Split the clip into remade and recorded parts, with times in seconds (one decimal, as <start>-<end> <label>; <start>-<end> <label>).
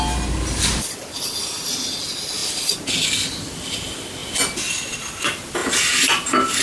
0.0-6.6 recorded